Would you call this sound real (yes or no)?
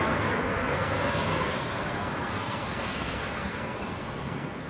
no